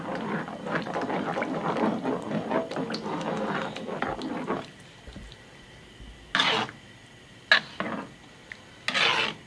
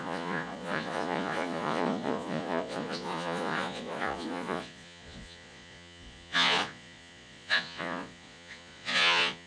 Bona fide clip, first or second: first